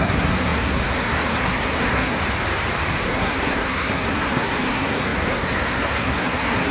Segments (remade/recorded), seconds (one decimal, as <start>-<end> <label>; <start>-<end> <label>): 0.0-2.2 remade; 2.2-3.0 recorded; 3.0-6.7 remade